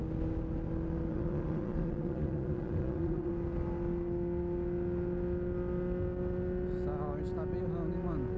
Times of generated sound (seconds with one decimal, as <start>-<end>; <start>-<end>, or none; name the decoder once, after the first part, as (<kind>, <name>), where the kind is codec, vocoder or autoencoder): 1.1-3.3 (vocoder, Vocos)